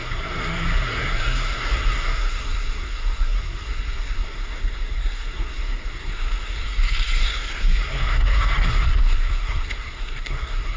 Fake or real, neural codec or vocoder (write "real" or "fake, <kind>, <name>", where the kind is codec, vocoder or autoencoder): fake, codec, SNAC